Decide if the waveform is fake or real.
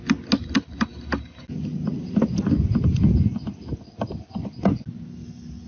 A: real